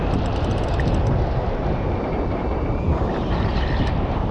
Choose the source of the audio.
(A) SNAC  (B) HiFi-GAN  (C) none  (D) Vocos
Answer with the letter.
C